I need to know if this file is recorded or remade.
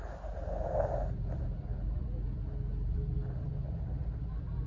recorded